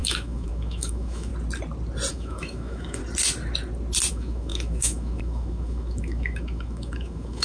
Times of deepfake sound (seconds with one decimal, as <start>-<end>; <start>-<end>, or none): 0.0-1.3; 2.1-3.0; 4.1-7.4